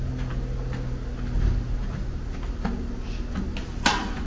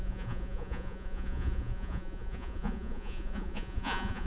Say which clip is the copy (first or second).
second